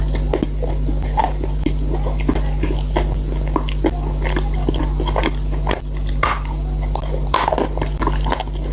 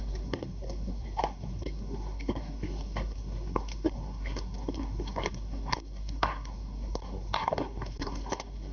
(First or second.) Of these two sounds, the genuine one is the first